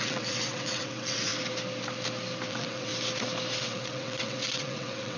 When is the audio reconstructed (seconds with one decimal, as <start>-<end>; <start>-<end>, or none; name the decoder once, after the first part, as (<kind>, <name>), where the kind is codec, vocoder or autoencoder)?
0.0-1.3 (vocoder, WaveNeXt); 2.5-2.9; 3.6-5.2